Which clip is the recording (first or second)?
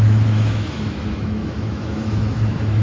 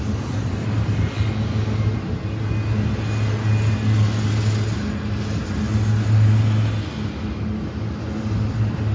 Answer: second